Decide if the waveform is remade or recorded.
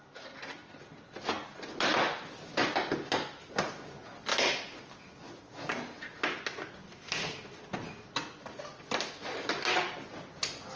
recorded